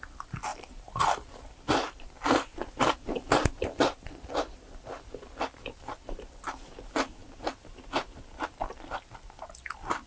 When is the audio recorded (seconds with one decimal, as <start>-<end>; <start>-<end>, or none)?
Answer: 0.0-0.5; 3.8-10.1